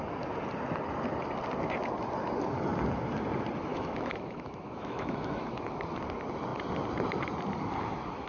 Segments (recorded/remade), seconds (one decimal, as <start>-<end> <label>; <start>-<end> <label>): 0.0-3.7 recorded; 3.7-5.7 remade; 5.7-8.3 recorded

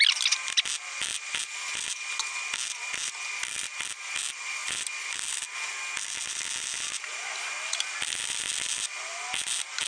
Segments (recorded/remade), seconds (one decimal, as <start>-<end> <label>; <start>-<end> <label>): 0.0-9.9 recorded

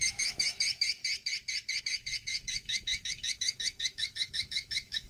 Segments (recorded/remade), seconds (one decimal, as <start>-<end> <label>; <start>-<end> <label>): 0.0-1.0 remade; 1.0-1.8 recorded; 1.8-5.1 remade

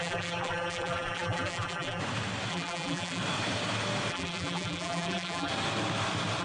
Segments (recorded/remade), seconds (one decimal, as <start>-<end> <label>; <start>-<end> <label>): 0.0-2.0 remade; 2.0-2.5 recorded; 2.5-3.2 remade; 3.2-4.1 recorded; 4.1-5.5 remade; 5.5-6.4 recorded

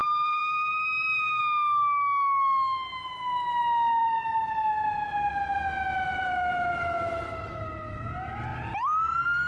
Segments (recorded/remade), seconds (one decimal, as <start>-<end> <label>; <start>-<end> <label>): 0.0-1.4 remade; 1.4-4.0 recorded; 4.0-5.3 remade; 5.3-9.5 recorded

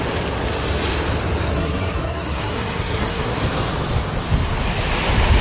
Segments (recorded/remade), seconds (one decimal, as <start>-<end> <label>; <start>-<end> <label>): 0.0-1.5 recorded; 1.5-3.4 remade; 3.4-5.4 recorded

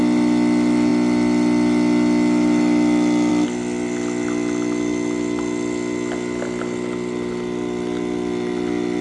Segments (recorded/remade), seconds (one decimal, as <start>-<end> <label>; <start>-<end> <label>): 0.0-9.0 recorded

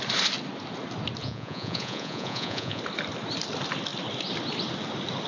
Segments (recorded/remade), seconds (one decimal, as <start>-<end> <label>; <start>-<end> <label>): 0.0-1.2 recorded; 1.2-2.8 remade; 2.8-5.3 recorded